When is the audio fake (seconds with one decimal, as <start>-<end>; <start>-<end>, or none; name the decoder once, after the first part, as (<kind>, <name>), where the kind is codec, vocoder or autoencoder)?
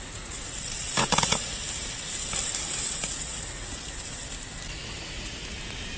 0.0-1.6 (vocoder, Vocos); 2.7-4.2; 5.0-5.4